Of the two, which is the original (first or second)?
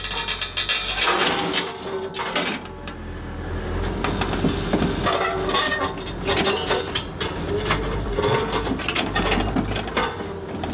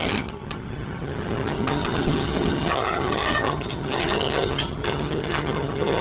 first